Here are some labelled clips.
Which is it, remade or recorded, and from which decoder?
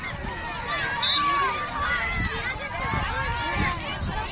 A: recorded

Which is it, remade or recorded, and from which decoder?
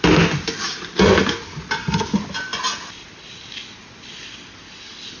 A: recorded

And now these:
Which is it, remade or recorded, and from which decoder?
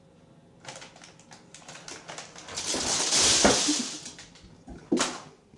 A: recorded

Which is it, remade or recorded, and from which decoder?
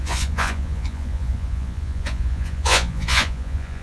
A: remade, vocoder, Vocos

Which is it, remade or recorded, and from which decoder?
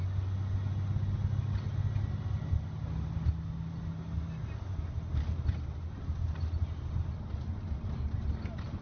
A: recorded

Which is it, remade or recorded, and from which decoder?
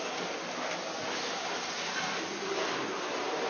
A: recorded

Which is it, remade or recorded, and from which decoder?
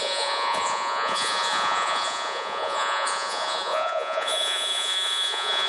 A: remade, vocoder, Vocos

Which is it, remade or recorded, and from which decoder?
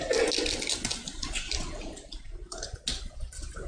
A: recorded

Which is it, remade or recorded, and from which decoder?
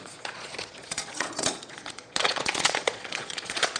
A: remade, vocoder, Vocos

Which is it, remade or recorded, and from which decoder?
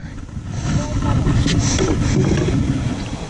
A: recorded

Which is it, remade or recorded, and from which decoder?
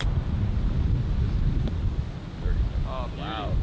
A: recorded